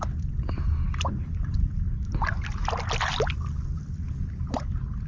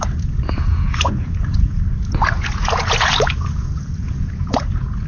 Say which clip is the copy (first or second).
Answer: second